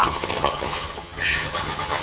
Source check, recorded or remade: remade